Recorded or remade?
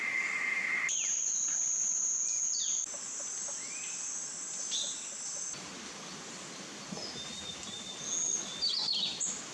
recorded